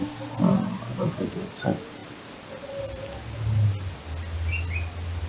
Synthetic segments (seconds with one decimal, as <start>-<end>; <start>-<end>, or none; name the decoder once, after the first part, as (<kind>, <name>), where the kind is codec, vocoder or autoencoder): 0.9-1.5 (vocoder, Vocos)